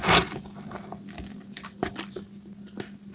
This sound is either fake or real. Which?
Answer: real